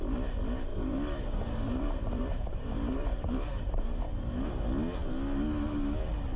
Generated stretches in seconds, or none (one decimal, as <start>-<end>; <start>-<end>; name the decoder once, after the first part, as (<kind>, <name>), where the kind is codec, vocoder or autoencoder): 0.7-4.5 (vocoder, BigVGAN v2)